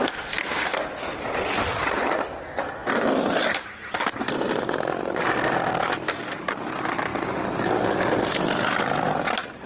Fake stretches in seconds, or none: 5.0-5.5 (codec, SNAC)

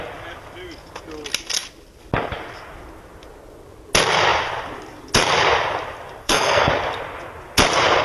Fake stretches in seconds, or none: 6.2-6.7 (codec, SNAC)

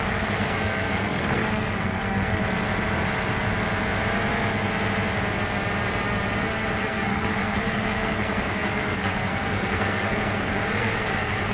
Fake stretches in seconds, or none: 0.0-2.4 (codec, SNAC); 6.8-11.5

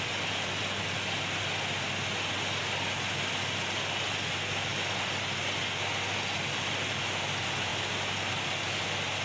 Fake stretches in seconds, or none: none

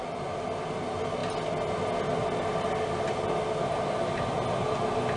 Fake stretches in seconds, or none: none

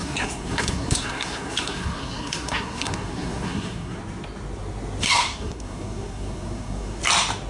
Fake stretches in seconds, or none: 0.0-4.0 (codec, SNAC); 5.0-7.0